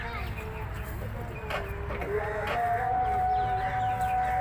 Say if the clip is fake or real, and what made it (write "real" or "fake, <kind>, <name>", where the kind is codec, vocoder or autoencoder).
real